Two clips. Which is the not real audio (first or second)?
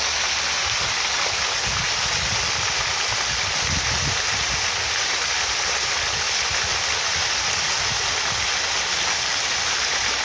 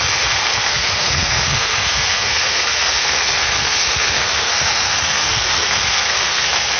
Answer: second